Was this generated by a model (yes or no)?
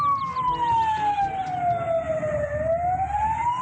no